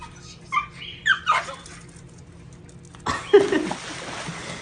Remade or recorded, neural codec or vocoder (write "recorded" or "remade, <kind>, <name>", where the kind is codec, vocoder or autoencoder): recorded